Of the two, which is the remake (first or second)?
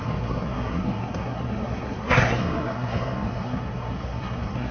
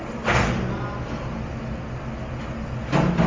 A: first